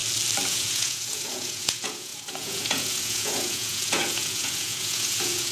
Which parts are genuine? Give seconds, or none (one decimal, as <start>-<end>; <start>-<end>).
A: 0.0-0.5